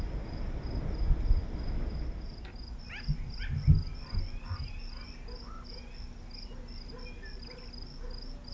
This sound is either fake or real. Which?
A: real